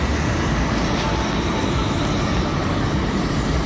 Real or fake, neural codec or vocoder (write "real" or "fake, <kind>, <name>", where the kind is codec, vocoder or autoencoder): fake, vocoder, BigVGAN v2